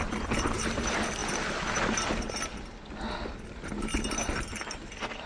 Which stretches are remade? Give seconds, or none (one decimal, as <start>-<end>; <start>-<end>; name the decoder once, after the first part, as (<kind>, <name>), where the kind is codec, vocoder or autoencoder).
none